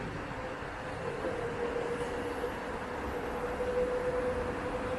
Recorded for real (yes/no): yes